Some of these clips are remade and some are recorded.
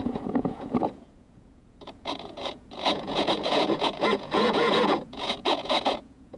remade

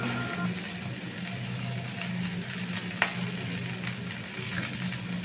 recorded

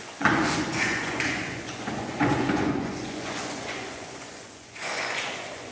remade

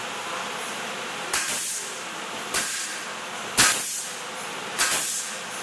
recorded